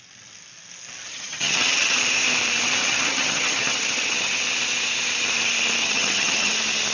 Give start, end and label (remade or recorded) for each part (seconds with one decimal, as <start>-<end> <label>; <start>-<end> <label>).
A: 0.0-1.1 recorded; 1.1-2.0 remade; 2.0-2.8 recorded; 2.8-4.4 remade; 4.4-5.8 recorded; 5.8-6.5 remade; 6.5-6.9 recorded